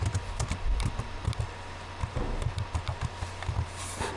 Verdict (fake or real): real